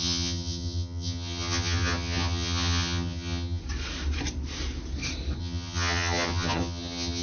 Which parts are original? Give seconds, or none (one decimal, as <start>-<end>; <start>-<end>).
3.6-5.4